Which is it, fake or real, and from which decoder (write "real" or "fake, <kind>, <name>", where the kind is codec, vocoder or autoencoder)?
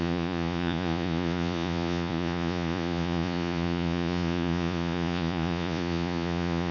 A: fake, vocoder, Vocos